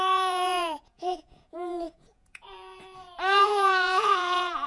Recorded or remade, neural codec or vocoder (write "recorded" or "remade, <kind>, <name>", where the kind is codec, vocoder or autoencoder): remade, vocoder, Vocos